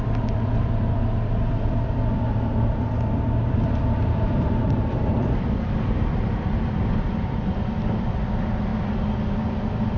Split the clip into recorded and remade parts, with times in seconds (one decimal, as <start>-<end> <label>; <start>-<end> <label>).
0.0-8.7 remade; 8.7-9.5 recorded; 9.5-10.0 remade